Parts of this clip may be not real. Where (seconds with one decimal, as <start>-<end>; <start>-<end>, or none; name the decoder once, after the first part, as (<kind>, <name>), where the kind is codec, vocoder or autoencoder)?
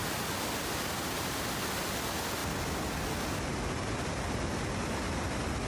none